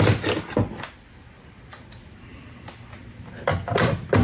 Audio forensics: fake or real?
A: real